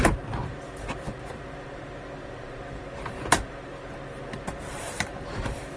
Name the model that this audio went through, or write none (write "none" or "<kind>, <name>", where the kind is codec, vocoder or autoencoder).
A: vocoder, BigVGAN v2